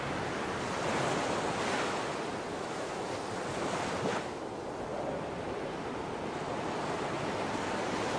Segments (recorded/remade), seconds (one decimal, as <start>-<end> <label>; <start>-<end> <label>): 0.0-2.5 recorded; 2.5-3.1 remade; 3.1-8.2 recorded